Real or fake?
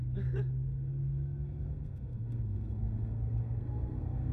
fake